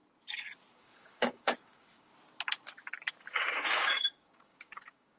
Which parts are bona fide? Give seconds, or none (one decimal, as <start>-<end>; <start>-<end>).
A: 0.0-0.7; 2.1-3.3